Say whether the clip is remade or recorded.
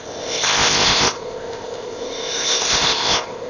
remade